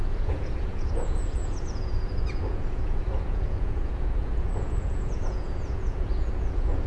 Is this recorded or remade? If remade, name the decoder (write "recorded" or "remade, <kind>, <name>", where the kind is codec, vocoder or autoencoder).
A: remade, vocoder, Vocos